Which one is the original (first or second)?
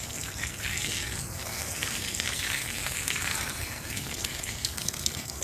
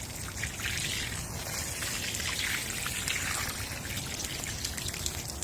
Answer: second